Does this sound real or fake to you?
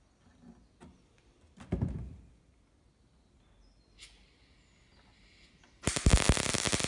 real